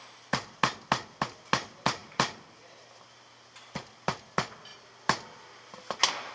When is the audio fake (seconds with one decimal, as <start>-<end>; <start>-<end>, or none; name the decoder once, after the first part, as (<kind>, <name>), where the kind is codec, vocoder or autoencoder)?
2.0-3.0 (vocoder, BigVGAN v2)